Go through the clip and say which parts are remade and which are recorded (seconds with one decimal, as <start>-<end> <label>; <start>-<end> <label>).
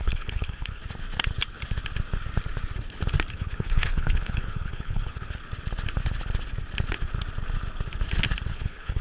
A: 0.0-0.8 remade; 0.8-3.3 recorded; 3.3-5.4 remade; 5.4-8.5 recorded; 8.5-9.0 remade